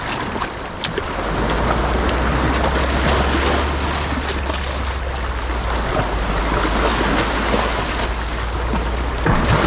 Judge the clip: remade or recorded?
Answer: recorded